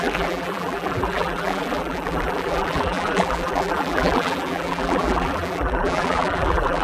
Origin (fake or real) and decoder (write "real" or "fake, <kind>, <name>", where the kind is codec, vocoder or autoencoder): fake, vocoder, BigVGAN v2